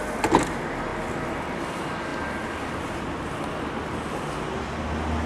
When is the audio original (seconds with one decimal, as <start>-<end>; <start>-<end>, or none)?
0.0-5.3